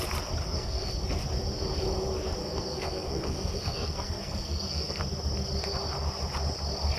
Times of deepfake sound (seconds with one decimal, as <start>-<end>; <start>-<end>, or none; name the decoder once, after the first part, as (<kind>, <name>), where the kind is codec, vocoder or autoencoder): 0.4-0.9 (codec, SNAC); 2.4-5.0